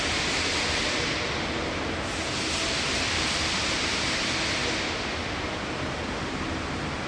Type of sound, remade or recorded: recorded